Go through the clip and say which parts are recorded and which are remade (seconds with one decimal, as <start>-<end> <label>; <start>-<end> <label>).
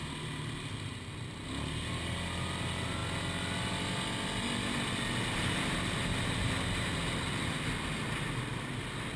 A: 0.0-9.2 recorded